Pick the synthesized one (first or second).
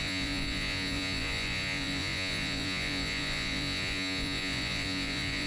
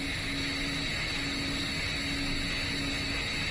first